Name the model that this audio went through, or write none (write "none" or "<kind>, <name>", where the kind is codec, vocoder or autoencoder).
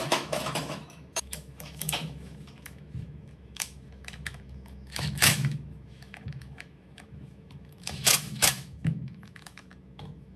autoencoder, DAC-VAE